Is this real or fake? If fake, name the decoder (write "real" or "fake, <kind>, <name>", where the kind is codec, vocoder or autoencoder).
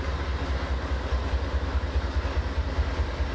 real